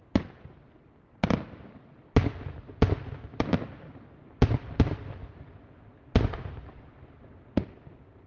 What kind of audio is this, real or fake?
real